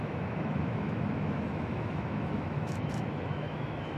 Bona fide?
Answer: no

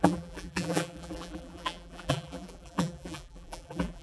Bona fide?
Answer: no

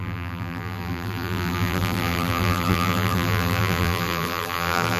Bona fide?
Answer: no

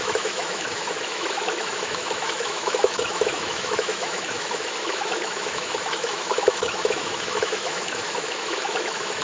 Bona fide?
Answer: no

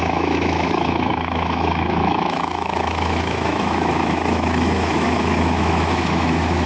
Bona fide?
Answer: no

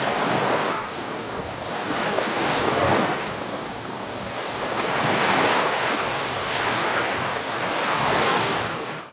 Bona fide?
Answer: no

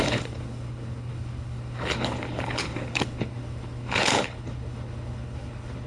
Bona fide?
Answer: no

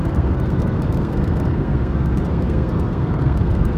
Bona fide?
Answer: no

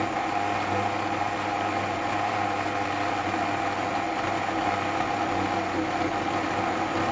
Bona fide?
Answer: yes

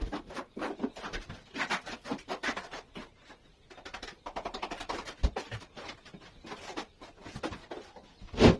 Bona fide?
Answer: yes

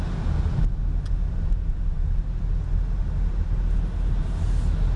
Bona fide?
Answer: yes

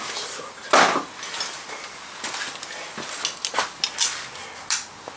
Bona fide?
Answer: yes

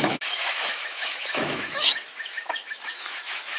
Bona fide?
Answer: no